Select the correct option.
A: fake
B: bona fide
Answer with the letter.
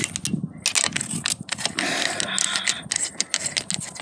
B